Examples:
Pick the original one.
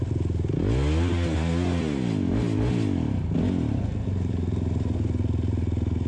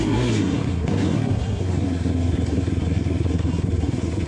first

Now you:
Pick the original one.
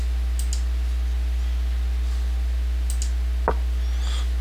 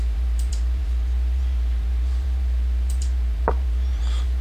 first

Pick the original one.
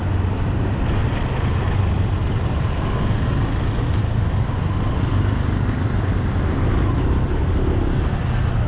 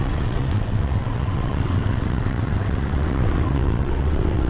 first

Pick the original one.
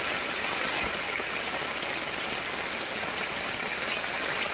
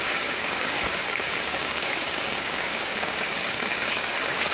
first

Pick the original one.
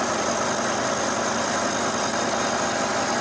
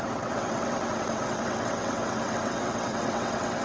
first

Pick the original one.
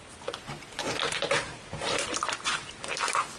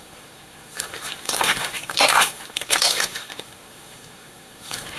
first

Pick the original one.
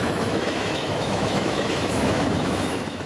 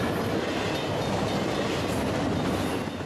second